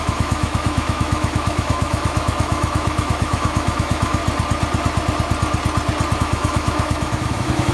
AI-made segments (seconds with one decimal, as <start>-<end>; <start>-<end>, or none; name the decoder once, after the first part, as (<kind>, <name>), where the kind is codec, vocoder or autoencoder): 0.0-4.2 (autoencoder, DAC-VAE); 6.2-7.7